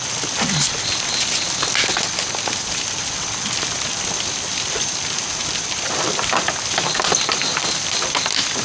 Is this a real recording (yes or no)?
yes